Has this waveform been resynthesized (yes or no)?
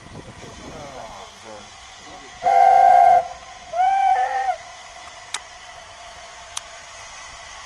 yes